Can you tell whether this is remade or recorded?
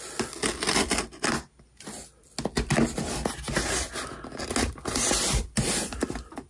recorded